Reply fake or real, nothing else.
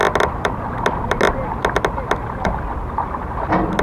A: real